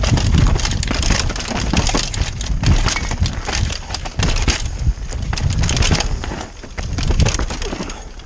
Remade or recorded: recorded